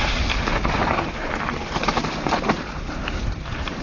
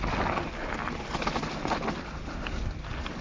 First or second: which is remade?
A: first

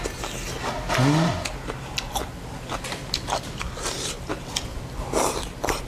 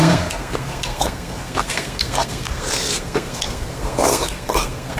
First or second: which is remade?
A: second